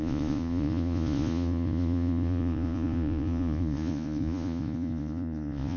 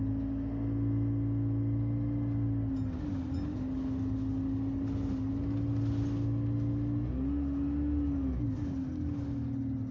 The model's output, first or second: first